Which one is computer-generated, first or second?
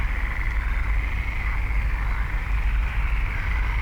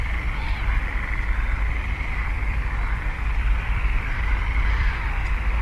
second